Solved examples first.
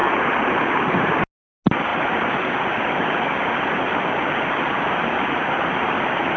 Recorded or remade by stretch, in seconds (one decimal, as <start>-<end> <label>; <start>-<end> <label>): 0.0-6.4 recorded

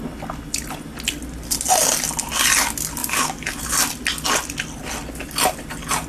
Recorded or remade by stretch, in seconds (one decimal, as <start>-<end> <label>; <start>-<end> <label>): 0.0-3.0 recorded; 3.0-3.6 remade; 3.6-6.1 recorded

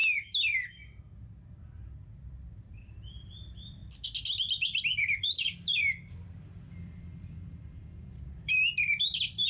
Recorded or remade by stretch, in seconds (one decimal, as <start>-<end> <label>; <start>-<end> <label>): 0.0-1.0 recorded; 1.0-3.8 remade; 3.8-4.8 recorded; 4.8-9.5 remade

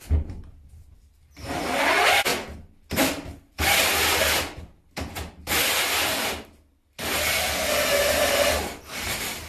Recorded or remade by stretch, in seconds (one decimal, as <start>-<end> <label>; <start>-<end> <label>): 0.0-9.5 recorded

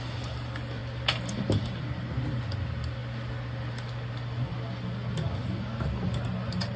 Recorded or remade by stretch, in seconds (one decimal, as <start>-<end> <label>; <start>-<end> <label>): 0.0-6.8 recorded